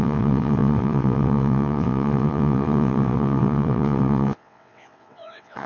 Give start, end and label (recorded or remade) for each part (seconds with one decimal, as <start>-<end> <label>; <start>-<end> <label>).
0.0-5.7 remade